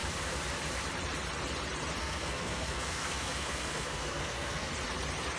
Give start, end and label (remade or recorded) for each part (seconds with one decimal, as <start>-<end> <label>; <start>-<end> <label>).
0.0-2.0 recorded; 2.0-4.7 remade; 4.7-5.4 recorded